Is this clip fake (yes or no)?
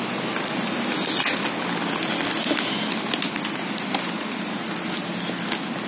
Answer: no